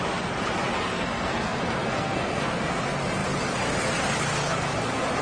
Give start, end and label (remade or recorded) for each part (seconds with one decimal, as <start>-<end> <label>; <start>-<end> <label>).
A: 0.0-0.9 recorded; 0.9-2.8 remade; 2.8-5.2 recorded